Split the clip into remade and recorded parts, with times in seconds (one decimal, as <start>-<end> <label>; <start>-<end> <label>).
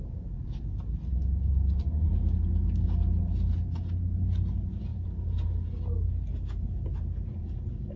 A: 0.0-8.0 recorded